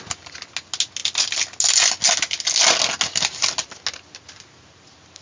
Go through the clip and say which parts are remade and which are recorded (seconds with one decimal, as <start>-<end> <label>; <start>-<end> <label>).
0.0-5.2 recorded